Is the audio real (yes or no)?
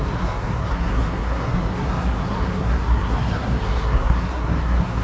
no